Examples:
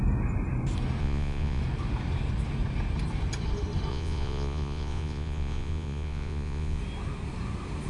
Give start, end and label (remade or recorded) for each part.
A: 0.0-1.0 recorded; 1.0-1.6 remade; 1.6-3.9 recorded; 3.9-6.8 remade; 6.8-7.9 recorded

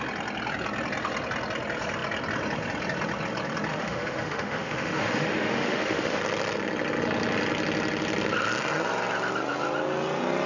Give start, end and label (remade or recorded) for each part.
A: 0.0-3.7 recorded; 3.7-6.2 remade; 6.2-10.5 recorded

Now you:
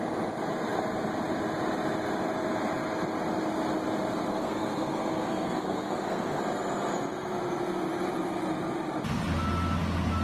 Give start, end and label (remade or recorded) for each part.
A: 0.0-4.3 recorded; 4.3-6.4 remade; 6.4-10.2 recorded